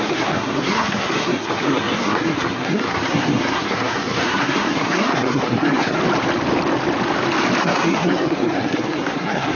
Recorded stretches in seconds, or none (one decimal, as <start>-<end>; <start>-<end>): 6.0-7.6